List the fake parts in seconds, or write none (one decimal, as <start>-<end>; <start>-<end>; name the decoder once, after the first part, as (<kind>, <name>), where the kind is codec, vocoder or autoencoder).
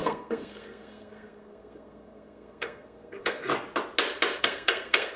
0.0-3.5 (codec, SNAC); 4.4-5.2